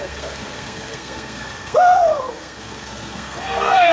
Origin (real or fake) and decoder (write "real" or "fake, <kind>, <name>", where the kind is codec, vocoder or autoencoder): fake, codec, SNAC